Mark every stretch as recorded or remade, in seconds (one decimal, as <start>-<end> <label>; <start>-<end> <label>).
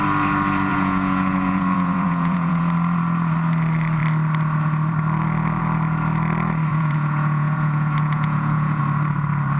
0.0-0.7 recorded; 0.7-2.6 remade; 2.6-6.7 recorded; 6.7-8.8 remade; 8.8-9.6 recorded